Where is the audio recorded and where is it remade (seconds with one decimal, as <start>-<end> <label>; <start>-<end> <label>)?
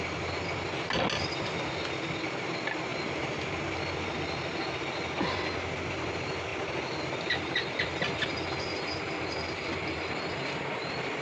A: 0.0-11.2 recorded